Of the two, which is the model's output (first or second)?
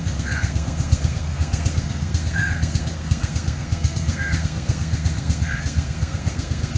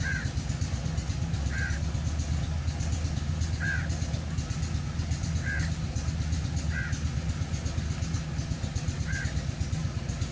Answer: first